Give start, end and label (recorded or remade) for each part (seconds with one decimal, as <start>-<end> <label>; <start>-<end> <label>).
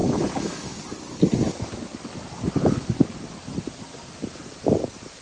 0.0-0.8 remade; 0.8-5.2 recorded